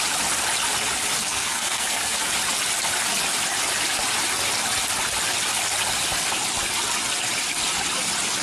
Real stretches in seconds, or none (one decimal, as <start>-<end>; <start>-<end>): 0.0-1.2; 2.3-8.4